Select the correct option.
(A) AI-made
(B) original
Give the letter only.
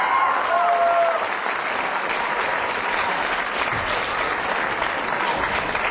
B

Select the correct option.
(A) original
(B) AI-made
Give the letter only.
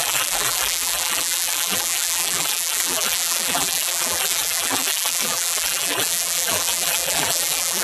B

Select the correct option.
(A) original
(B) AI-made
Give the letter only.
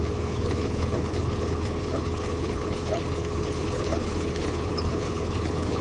B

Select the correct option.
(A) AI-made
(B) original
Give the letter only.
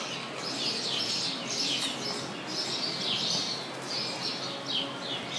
B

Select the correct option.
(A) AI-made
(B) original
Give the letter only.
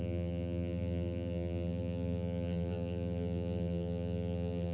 A